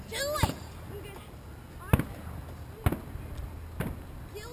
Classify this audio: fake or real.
real